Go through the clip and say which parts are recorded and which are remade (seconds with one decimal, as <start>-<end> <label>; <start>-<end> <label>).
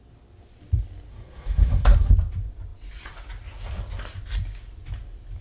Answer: 0.0-1.1 recorded; 1.1-2.1 remade; 2.1-5.4 recorded